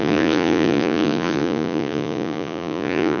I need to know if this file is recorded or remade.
remade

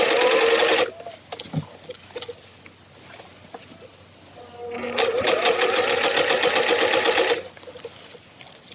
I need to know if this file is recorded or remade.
recorded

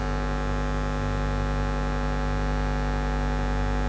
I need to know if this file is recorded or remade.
recorded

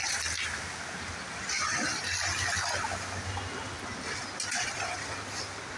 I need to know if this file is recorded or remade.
recorded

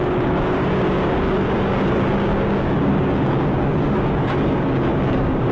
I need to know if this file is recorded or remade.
remade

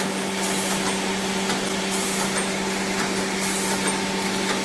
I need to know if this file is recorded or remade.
recorded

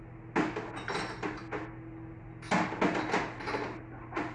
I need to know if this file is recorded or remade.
recorded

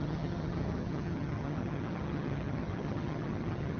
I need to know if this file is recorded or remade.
remade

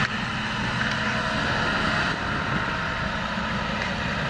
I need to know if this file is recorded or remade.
recorded